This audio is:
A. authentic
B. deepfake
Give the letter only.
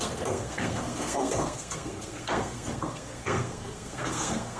B